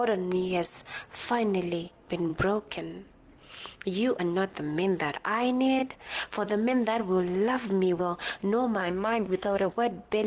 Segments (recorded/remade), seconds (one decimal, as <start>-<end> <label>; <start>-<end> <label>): 0.0-8.8 recorded; 8.8-9.7 remade; 9.7-10.3 recorded